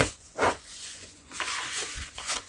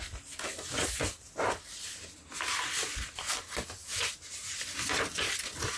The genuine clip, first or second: second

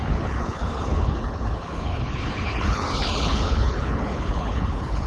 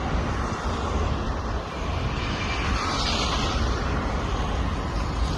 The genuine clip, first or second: second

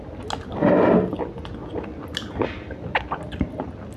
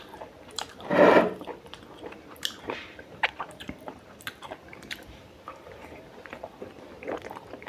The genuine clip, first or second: first